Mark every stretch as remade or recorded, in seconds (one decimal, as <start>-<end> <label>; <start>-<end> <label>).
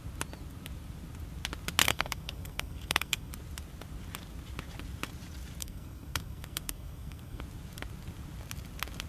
0.0-1.8 recorded; 1.8-3.3 remade; 3.3-5.6 recorded; 5.6-7.4 remade; 7.4-9.1 recorded